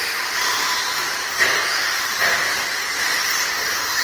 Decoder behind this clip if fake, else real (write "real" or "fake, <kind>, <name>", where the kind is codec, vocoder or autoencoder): real